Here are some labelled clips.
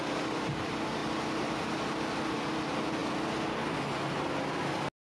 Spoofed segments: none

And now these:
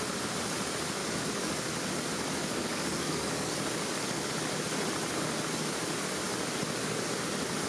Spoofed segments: 1.0-1.7 (codec, DAC); 2.4-4.3

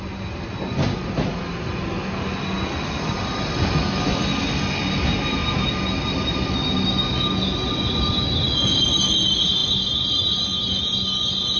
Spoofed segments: none

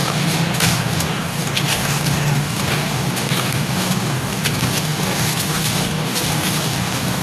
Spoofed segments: 0.0-7.2 (codec, DAC)

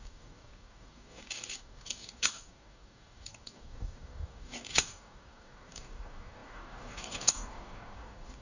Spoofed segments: 0.0-8.4 (codec, DAC)

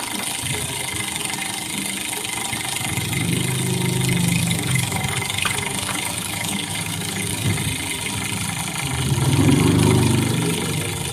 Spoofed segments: 4.4-7.5 (codec, DAC)

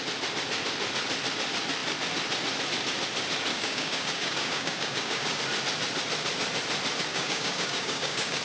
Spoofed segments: 3.5-5.4 (codec, DAC); 7.1-8.4